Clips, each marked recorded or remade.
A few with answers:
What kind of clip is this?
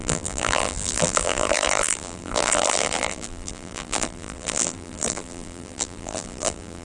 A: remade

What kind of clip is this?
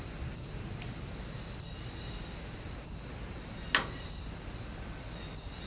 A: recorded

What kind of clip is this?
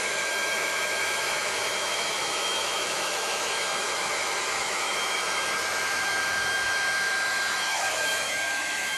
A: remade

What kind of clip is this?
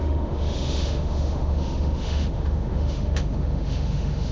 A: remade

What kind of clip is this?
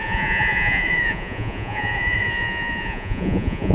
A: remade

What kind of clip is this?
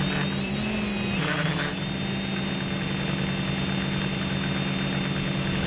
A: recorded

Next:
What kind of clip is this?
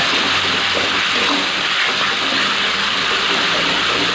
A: recorded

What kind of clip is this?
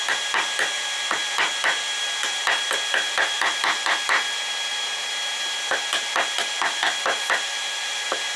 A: recorded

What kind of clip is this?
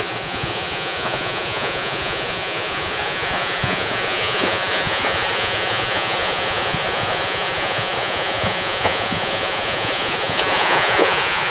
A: remade